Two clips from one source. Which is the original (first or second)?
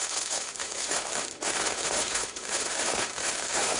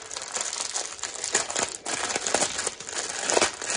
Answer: second